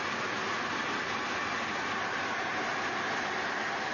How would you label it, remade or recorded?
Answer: recorded